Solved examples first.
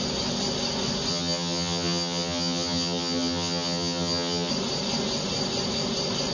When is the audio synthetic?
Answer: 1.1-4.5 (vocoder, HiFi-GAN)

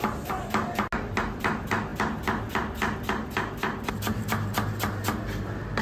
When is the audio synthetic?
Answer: none

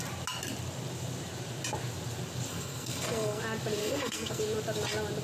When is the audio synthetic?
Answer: 2.5-3.4 (codec, SNAC); 3.8-4.4